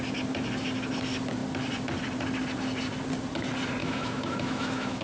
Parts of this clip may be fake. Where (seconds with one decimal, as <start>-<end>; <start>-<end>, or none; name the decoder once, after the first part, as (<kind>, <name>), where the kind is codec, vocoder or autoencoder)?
3.8-5.0 (autoencoder, DAC-VAE)

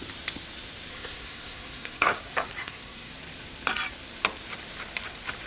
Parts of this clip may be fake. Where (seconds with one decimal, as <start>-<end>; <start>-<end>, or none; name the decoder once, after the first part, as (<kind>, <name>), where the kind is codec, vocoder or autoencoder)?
0.9-2.2 (codec, SNAC); 2.6-3.1

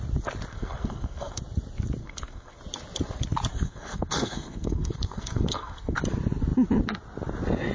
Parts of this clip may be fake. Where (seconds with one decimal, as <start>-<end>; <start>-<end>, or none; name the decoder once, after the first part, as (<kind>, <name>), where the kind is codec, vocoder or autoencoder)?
0.5-1.4 (codec, SNAC); 2.0-2.6; 3.5-6.0

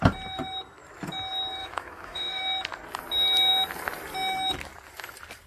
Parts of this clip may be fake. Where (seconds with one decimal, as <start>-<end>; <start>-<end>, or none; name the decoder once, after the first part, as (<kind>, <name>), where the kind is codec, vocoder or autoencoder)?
1.6-2.4 (autoencoder, DAC-VAE)

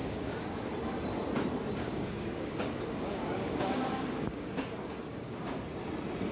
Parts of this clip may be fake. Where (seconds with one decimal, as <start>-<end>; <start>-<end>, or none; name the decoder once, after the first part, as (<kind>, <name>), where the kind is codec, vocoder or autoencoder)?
0.0-0.6 (codec, DAC); 1.8-5.6

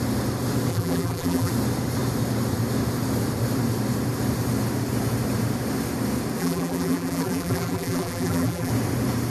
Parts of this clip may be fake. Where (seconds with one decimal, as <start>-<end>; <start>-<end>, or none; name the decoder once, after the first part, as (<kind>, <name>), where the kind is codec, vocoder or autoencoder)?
0.7-1.5 (vocoder, BigVGAN v2); 6.4-8.7

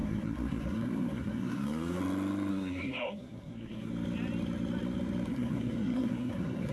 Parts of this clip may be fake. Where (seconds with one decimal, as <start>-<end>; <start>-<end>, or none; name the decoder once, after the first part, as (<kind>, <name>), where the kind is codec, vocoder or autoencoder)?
0.0-2.0 (codec, SNAC); 2.5-3.9; 5.3-6.7